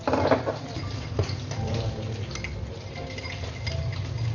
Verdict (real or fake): real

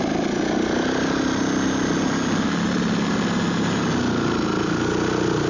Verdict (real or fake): real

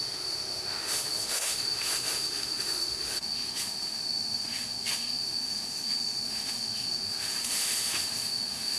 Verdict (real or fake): fake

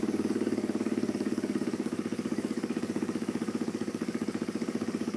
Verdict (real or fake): fake